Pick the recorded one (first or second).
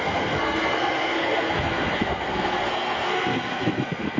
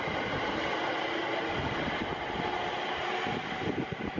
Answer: second